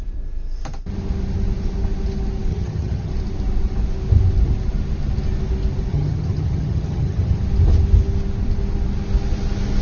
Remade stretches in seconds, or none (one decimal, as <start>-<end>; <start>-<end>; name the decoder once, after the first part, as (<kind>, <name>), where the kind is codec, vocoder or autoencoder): 2.5-3.1 (vocoder, HiFi-GAN); 5.9-7.4